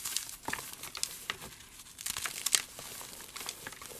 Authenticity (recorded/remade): recorded